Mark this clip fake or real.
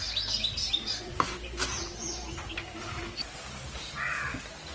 real